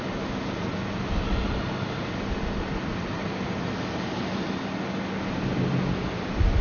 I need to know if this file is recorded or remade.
recorded